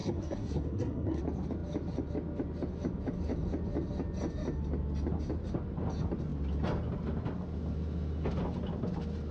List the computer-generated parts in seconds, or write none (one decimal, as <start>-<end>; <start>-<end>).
0.0-1.2